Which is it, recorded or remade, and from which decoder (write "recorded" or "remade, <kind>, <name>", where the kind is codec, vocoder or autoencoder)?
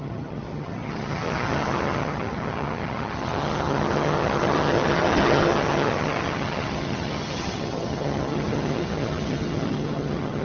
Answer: remade, vocoder, HiFi-GAN